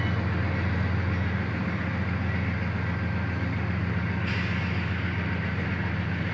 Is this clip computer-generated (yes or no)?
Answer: no